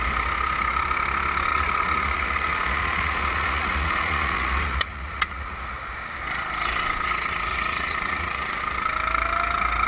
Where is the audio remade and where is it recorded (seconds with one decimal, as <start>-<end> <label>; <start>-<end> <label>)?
0.0-1.5 recorded; 1.5-5.6 remade; 5.6-7.5 recorded; 7.5-8.6 remade; 8.6-9.9 recorded